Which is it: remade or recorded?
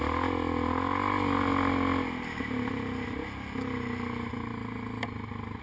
recorded